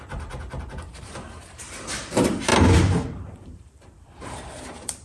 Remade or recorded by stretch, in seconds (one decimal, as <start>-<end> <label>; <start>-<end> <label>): 0.0-2.5 remade; 2.5-3.3 recorded; 3.3-5.0 remade